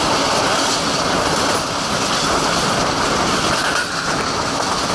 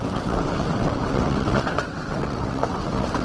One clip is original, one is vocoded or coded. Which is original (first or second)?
first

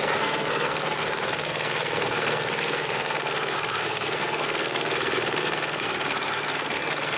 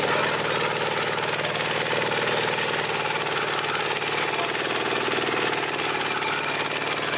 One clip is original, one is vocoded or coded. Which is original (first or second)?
second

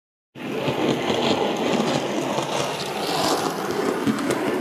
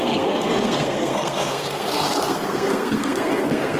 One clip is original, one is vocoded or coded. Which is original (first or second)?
first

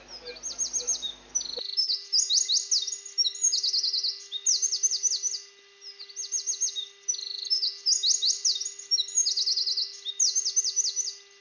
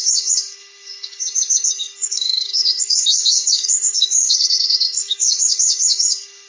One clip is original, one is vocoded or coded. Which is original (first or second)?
first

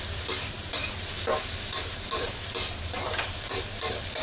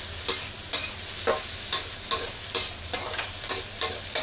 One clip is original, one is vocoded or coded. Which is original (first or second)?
second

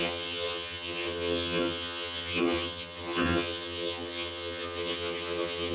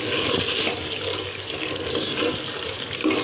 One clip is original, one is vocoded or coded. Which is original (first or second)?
second